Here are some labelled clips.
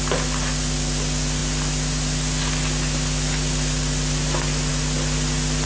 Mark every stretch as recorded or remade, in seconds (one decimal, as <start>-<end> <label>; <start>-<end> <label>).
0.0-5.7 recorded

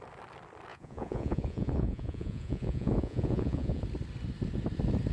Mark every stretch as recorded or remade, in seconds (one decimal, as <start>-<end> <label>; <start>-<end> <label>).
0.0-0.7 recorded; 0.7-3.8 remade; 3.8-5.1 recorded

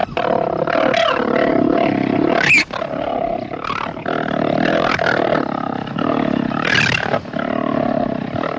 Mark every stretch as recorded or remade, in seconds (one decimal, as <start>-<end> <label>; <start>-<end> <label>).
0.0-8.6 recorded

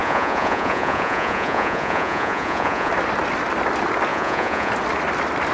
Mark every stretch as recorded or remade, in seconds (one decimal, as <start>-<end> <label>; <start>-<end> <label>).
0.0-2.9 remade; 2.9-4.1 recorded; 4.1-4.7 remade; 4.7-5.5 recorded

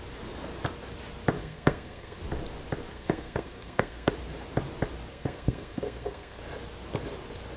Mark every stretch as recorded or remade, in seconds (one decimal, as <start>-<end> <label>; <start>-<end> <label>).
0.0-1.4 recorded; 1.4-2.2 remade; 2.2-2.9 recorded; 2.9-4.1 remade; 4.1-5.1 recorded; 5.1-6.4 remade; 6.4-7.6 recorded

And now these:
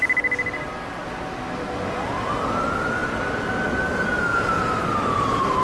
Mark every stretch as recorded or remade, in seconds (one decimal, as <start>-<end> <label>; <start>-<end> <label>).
0.0-5.6 recorded

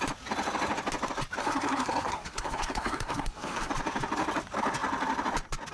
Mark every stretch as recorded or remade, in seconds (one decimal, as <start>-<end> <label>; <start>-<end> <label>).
0.0-1.4 recorded; 1.4-3.7 remade; 3.7-5.7 recorded

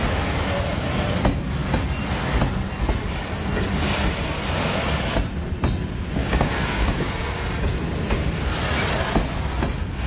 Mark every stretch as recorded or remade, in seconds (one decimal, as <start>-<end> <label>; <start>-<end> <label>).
0.0-6.2 recorded; 6.2-7.1 remade; 7.1-10.1 recorded